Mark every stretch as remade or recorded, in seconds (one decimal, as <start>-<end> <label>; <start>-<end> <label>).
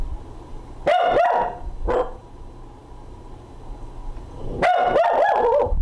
0.0-5.8 recorded